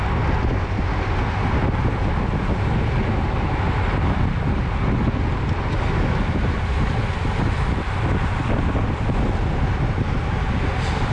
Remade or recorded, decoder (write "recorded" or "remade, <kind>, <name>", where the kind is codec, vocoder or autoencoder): recorded